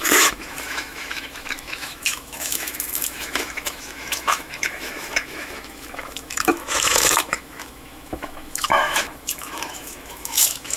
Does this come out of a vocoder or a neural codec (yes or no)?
yes